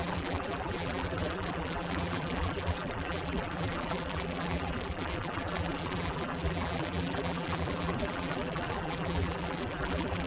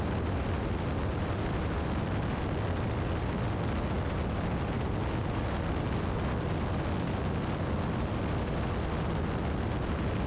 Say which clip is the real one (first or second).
second